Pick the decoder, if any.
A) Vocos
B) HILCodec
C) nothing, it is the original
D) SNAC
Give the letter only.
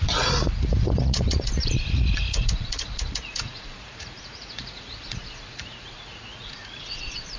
A